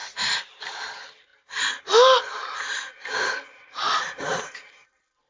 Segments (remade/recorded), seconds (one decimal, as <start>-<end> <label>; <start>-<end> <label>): 0.0-0.7 remade; 0.7-2.3 recorded; 2.3-3.3 remade; 3.3-4.3 recorded; 4.3-5.3 remade